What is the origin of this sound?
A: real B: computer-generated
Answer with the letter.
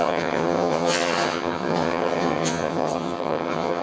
B